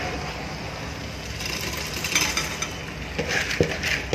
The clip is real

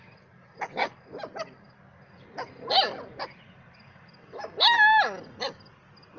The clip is real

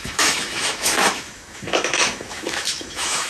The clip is fake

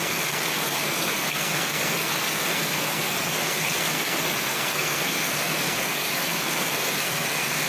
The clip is fake